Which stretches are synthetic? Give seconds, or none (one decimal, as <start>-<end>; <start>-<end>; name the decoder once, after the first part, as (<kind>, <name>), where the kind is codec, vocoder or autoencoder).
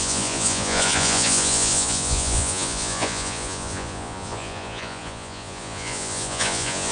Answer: 0.0-6.9 (vocoder, Vocos)